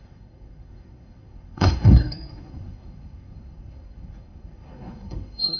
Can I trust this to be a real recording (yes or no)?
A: no